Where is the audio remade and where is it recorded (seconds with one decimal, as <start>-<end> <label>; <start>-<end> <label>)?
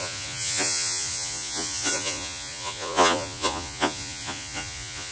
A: 0.0-5.1 remade